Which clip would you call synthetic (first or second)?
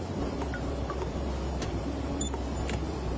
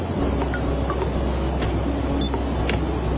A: first